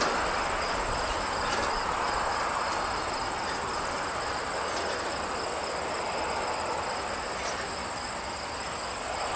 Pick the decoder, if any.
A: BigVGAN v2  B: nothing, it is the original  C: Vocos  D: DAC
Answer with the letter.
B